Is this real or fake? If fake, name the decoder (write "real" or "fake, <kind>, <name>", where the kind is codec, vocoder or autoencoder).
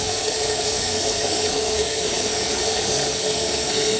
fake, codec, SNAC